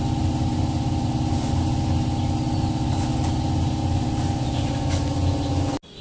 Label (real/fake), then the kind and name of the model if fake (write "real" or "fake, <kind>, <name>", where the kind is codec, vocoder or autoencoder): real